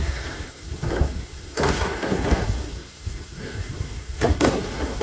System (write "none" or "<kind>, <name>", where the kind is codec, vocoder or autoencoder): codec, SNAC